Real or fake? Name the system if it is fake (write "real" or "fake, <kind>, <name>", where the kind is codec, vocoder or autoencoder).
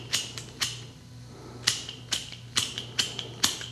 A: fake, vocoder, BigVGAN v2